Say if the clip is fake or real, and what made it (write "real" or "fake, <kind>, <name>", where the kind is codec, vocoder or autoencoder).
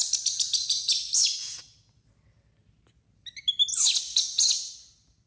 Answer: real